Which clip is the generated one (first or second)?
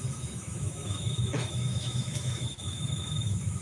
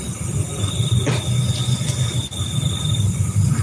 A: first